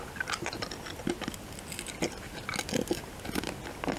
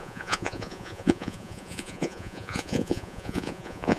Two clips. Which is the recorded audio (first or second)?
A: first